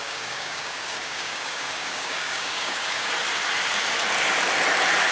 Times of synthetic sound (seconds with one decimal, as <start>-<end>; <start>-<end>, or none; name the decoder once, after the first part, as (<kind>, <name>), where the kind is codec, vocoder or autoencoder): 0.0-3.1 (codec, DAC)